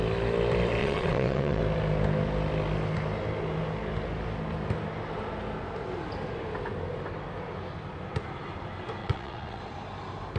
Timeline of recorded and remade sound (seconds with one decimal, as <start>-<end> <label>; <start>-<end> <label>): 0.0-0.8 recorded; 0.8-1.6 remade; 1.6-9.0 recorded; 9.0-9.6 remade; 9.6-10.4 recorded